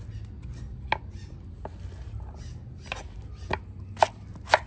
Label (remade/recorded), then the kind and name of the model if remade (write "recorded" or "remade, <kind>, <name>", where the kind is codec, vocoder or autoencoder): recorded